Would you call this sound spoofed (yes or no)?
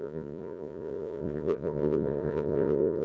yes